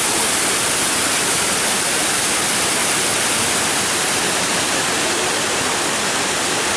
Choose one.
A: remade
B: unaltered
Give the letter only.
B